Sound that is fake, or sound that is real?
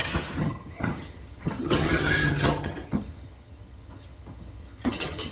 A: fake